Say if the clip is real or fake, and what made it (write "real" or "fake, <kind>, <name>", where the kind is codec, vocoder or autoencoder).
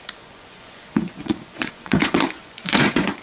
fake, vocoder, Vocos